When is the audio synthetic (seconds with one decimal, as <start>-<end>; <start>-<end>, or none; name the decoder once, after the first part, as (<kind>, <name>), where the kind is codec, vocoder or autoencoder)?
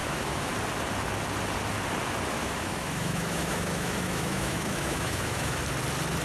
0.0-0.5 (autoencoder, DAC-VAE); 2.4-5.6